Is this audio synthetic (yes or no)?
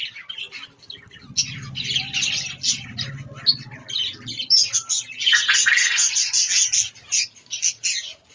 no